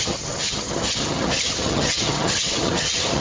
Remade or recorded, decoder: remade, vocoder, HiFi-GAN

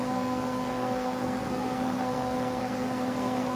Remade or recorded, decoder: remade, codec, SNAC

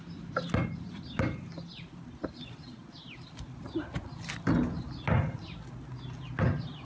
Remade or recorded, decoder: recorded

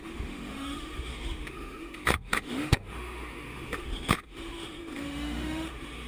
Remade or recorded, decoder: remade, autoencoder, DAC-VAE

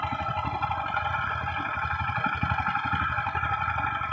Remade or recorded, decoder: recorded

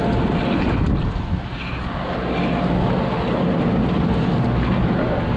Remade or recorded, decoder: recorded